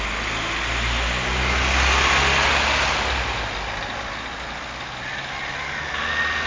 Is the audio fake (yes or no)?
no